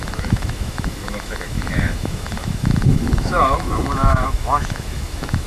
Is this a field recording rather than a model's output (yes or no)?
no